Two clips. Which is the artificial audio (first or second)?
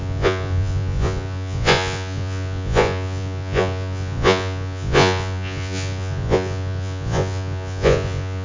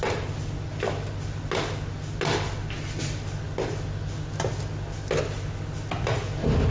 first